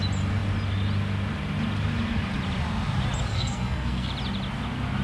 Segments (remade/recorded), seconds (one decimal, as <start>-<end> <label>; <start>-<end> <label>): 0.0-3.3 recorded; 3.3-4.1 remade; 4.1-5.0 recorded